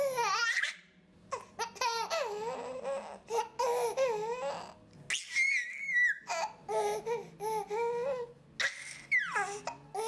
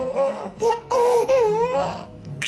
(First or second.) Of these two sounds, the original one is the first